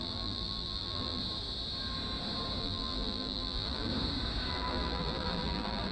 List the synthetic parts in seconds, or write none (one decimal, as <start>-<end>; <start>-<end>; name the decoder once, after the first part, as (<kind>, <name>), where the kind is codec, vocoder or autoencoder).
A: 0.0-1.2 (vocoder, BigVGAN v2); 2.6-3.9; 4.5-5.9

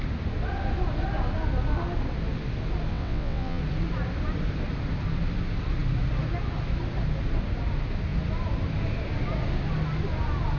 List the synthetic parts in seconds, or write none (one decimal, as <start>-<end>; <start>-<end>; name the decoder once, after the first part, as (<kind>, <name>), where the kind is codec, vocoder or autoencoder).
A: 2.9-3.6 (vocoder, WaveNeXt)

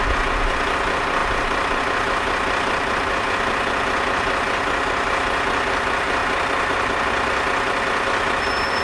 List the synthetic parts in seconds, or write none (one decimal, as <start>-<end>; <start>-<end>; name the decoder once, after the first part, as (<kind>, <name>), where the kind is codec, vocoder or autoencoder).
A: 6.2-7.0 (vocoder, BigVGAN v2)

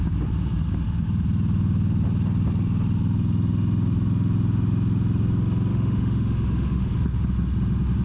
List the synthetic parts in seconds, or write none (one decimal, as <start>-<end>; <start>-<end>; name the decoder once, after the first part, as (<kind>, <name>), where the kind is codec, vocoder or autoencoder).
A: 5.7-6.9 (autoencoder, DAC-VAE)